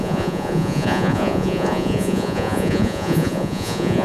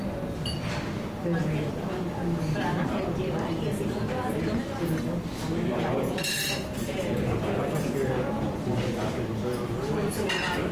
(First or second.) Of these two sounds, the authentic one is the second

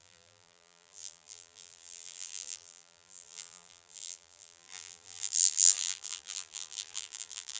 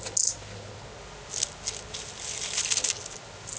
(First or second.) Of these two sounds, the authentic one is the second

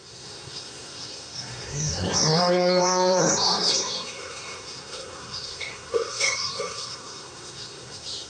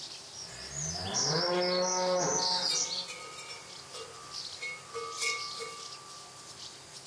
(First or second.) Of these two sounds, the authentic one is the second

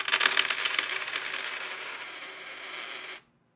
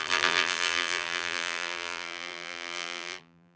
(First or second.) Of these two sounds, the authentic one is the first